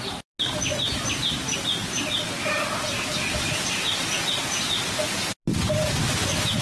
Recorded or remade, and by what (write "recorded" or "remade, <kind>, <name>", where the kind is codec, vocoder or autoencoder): recorded